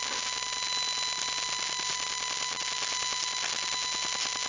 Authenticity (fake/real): real